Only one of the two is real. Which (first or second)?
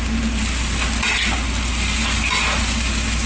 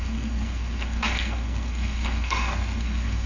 first